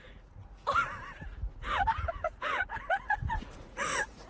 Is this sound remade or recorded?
remade